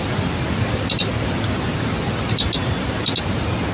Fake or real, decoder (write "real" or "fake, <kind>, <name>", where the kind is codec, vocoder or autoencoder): real